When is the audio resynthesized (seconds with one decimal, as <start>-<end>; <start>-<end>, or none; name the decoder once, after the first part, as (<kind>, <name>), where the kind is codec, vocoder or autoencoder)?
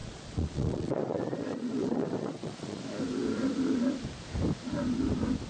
0.0-2.8 (vocoder, Vocos)